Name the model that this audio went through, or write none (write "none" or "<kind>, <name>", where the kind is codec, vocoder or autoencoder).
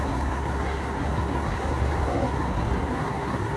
codec, SNAC